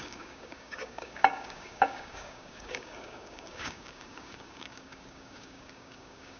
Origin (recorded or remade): remade